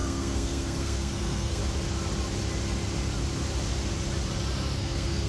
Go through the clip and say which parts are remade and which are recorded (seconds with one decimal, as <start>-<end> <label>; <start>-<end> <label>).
0.0-1.6 remade; 1.6-4.8 recorded; 4.8-5.3 remade